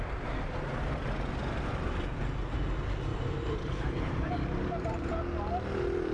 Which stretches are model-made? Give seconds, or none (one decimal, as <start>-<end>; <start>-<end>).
3.1-5.1